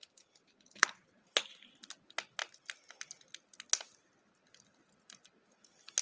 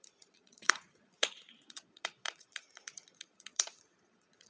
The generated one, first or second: second